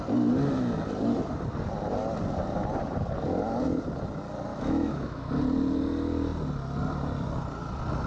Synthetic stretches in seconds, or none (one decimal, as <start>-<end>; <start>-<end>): 4.5-5.3